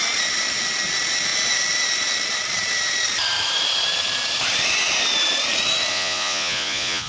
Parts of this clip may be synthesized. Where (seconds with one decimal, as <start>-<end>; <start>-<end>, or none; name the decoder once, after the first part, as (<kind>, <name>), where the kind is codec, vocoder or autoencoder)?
5.9-7.1 (vocoder, Vocos)